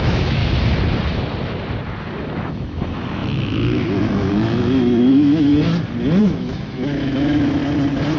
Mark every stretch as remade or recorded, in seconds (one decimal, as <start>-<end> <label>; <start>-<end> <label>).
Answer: 0.0-0.4 remade; 0.4-2.2 recorded; 2.2-5.5 remade; 5.5-6.2 recorded; 6.2-7.6 remade; 7.6-8.2 recorded